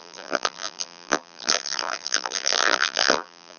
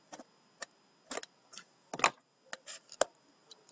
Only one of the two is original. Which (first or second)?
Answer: second